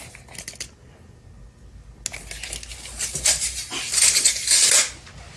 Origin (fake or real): real